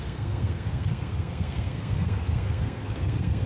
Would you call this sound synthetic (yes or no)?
yes